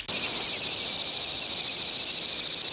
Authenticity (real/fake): real